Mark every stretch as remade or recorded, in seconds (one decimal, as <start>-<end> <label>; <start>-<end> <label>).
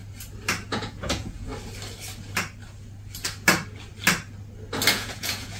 0.0-0.7 recorded; 0.7-1.5 remade; 1.5-4.9 recorded; 4.9-5.6 remade